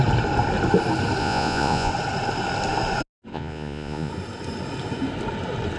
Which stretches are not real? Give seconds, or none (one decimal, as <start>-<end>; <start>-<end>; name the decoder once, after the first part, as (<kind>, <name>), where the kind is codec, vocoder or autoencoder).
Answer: 1.2-1.9 (vocoder, Vocos); 3.3-4.1